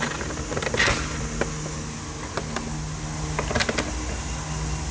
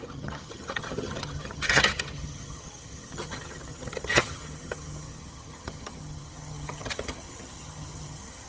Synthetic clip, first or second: second